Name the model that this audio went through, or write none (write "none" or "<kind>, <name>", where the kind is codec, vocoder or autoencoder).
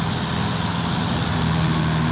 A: none